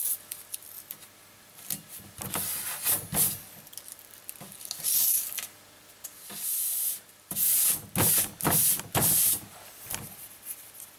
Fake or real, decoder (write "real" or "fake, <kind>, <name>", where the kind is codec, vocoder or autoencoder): real